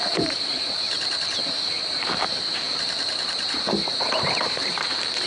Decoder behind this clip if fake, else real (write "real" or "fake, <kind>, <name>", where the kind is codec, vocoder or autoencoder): fake, vocoder, BigVGAN v2